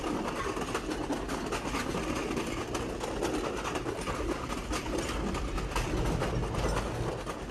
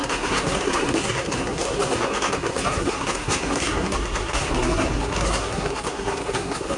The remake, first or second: second